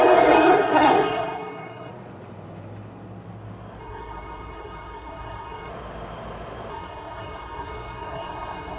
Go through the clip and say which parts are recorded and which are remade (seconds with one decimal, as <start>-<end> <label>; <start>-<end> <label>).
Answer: 0.0-1.9 remade; 1.9-3.8 recorded; 3.8-5.7 remade; 5.7-6.7 recorded; 6.7-8.8 remade